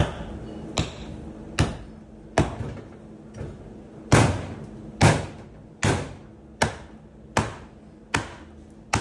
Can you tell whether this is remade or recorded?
recorded